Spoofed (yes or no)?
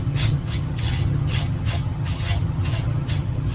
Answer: yes